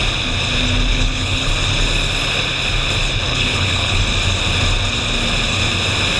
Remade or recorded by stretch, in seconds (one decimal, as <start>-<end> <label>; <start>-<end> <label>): 0.0-0.9 recorded; 0.9-1.5 remade; 1.5-3.3 recorded; 3.3-4.0 remade; 4.0-6.2 recorded